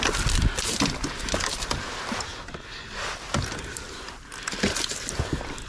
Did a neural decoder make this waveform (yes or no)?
no